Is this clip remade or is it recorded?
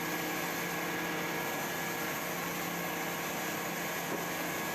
recorded